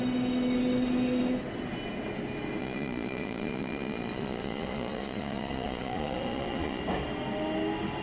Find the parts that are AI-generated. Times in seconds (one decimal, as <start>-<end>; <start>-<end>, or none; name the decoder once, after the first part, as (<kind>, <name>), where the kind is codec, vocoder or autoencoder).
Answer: 2.6-6.8 (vocoder, Vocos)